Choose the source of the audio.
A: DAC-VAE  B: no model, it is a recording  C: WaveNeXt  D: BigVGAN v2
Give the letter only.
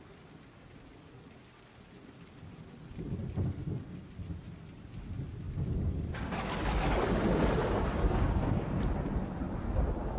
B